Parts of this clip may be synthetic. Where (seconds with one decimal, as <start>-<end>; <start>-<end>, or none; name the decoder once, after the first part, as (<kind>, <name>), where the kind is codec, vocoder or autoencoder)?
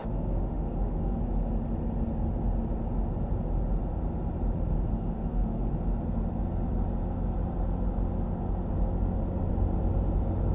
0.0-1.2 (autoencoder, DAC-VAE); 4.9-5.7